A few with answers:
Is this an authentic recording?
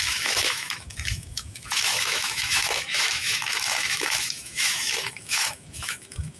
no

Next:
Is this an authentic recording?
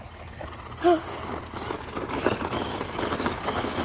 yes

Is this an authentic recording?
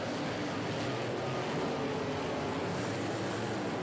yes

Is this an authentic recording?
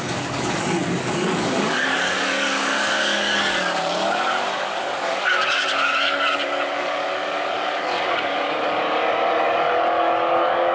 no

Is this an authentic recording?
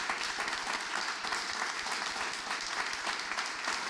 yes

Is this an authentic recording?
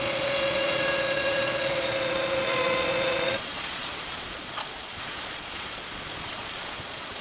no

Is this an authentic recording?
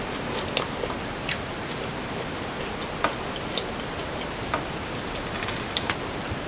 yes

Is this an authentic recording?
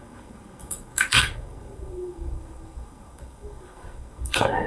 no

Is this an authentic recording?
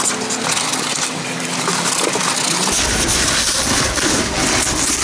yes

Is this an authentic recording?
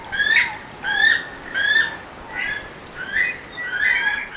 yes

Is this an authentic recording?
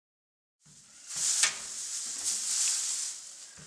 yes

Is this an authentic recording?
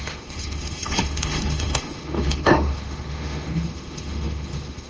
no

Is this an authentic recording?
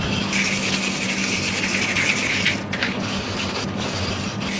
yes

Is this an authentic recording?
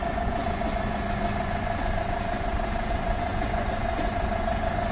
no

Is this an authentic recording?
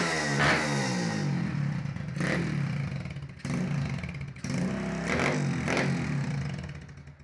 yes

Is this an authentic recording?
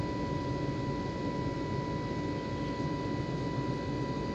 yes